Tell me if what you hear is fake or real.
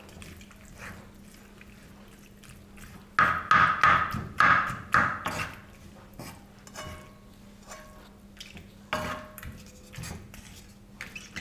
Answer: real